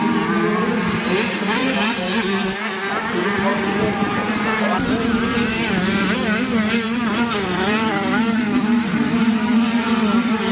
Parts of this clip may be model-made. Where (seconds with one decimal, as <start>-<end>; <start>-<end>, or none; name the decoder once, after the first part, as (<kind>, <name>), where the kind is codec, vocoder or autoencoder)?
0.0-3.5 (vocoder, BigVGAN v2); 5.7-10.5